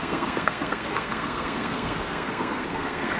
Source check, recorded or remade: remade